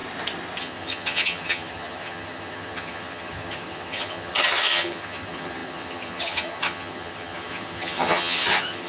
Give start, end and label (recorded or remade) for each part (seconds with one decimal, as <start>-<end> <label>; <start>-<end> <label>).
0.0-0.6 recorded; 0.6-8.9 remade